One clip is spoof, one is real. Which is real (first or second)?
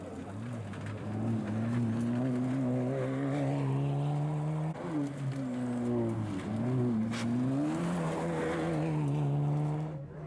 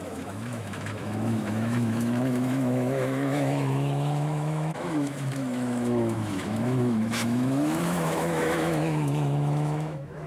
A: first